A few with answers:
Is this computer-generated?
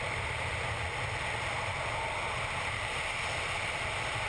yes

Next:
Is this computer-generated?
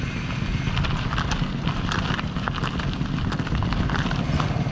no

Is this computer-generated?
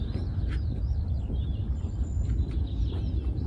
yes